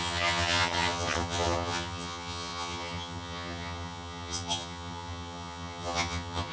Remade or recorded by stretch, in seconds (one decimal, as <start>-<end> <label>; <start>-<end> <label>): 0.0-6.5 remade